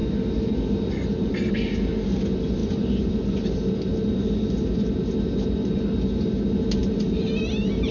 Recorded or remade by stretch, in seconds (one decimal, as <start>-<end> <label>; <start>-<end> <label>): 0.0-7.9 recorded